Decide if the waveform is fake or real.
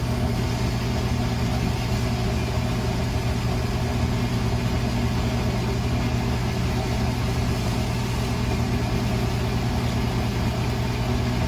real